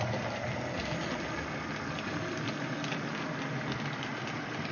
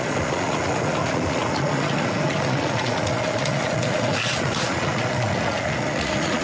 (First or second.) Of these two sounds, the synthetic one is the second